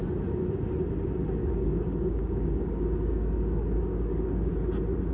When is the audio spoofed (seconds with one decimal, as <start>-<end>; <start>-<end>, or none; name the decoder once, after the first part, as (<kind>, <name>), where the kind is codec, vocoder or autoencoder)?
1.4-4.5 (codec, DAC)